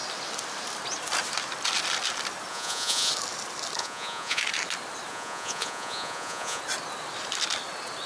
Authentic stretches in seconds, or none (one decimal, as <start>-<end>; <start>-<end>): 0.0-2.5; 3.1-3.8; 4.4-5.1; 6.6-8.1